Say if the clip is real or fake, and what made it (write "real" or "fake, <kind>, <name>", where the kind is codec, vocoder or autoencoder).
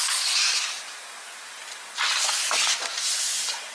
real